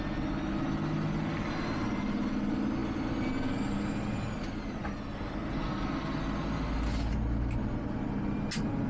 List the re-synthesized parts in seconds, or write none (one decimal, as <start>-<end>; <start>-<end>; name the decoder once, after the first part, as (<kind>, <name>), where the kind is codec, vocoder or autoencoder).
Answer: none